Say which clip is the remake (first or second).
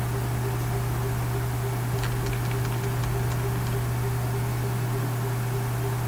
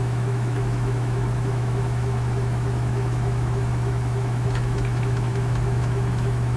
second